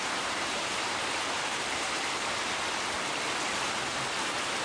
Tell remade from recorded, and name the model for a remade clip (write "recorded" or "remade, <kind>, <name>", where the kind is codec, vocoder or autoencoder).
recorded